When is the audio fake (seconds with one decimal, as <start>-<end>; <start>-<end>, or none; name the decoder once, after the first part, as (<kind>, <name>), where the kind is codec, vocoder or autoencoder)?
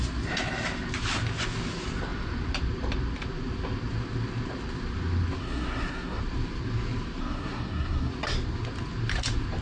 5.4-6.2 (codec, SNAC); 7.2-8.1